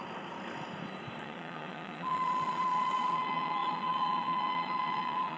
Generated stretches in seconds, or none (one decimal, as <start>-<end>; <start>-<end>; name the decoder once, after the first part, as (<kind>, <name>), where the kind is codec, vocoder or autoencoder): 1.2-5.4 (vocoder, Vocos)